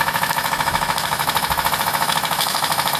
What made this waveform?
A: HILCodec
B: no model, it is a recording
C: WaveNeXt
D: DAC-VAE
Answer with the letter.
D